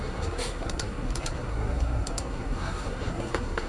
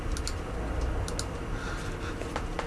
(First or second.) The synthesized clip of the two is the first